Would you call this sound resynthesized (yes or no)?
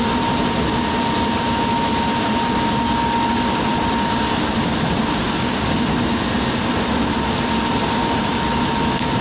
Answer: no